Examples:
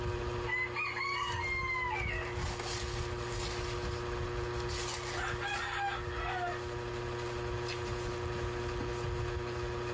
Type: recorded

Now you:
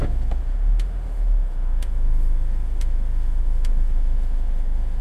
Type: remade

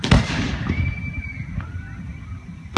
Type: recorded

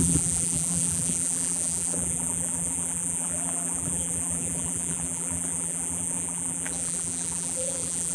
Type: remade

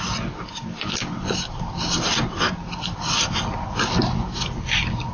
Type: recorded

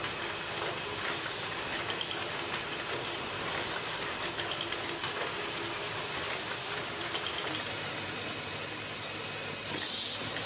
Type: recorded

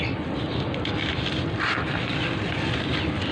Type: remade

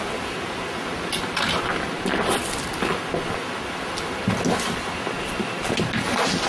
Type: recorded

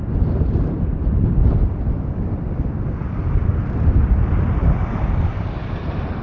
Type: recorded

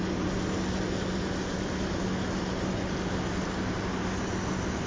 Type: recorded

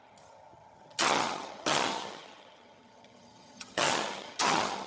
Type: remade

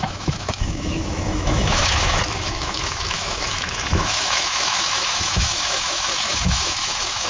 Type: remade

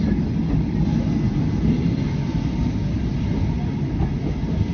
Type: recorded